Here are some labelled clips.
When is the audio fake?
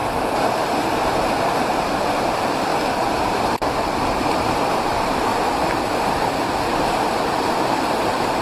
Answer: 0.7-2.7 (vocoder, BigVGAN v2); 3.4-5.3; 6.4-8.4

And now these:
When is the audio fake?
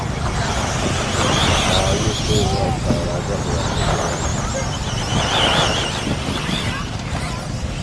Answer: 0.0-3.1 (vocoder, BigVGAN v2); 3.7-7.8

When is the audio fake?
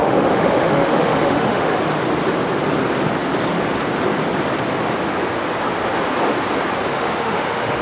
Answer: 0.0-1.8 (autoencoder, DAC-VAE); 6.9-7.8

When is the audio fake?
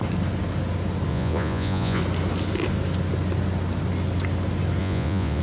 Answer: 1.1-2.0 (vocoder, Vocos); 4.8-5.4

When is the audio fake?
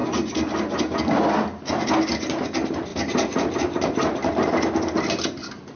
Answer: 2.9-4.5 (vocoder, BigVGAN v2)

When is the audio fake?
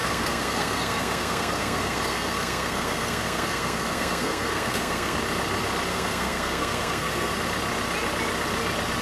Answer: 0.0-5.2 (codec, SNAC); 5.9-7.3